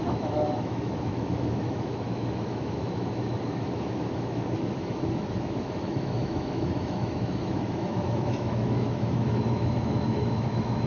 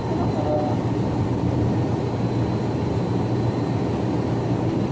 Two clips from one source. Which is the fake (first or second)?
first